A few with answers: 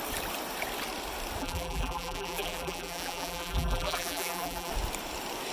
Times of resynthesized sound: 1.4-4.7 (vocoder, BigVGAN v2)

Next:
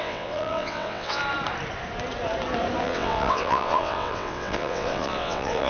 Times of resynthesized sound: 0.0-1.2 (vocoder, WaveNeXt); 2.8-5.7

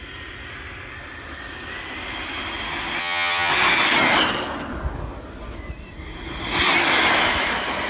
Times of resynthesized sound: 3.0-3.5 (vocoder, HiFi-GAN)

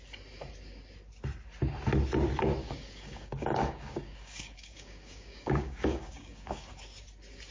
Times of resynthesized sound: 2.6-6.7 (codec, DAC)